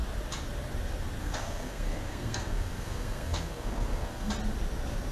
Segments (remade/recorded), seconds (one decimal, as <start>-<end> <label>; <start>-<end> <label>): 0.0-1.2 recorded; 1.2-4.3 remade; 4.3-5.1 recorded